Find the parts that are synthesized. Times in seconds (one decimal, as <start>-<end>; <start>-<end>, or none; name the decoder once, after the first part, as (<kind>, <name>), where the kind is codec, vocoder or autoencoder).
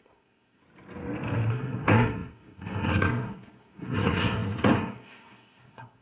0.0-0.6 (codec, SNAC); 1.5-6.0